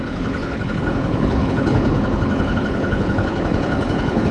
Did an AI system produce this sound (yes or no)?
yes